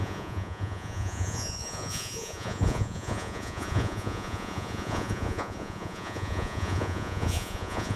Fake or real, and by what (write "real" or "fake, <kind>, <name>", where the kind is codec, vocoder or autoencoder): fake, vocoder, Vocos